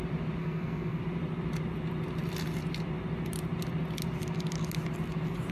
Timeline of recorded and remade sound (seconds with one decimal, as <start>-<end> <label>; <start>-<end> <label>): 0.0-0.4 recorded; 0.4-1.0 remade; 1.0-5.5 recorded